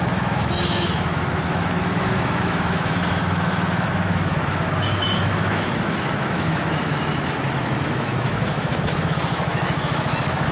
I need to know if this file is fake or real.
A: fake